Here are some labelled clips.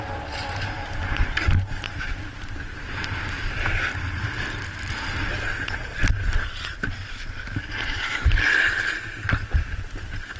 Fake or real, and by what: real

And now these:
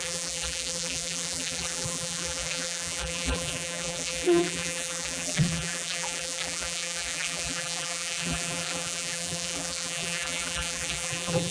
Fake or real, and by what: fake, vocoder, BigVGAN v2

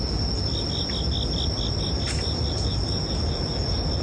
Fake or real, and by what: real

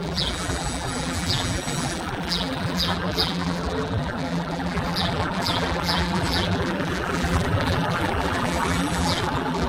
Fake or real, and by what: fake, vocoder, BigVGAN v2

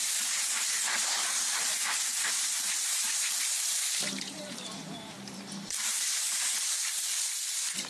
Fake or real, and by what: fake, vocoder, BigVGAN v2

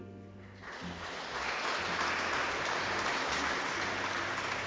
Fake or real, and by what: real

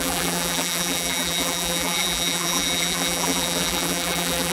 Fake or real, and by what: fake, vocoder, BigVGAN v2